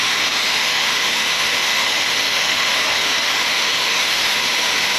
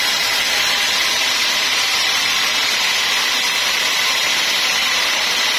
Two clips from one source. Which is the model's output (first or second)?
first